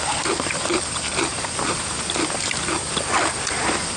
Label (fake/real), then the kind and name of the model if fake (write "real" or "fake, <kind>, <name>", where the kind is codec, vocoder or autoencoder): real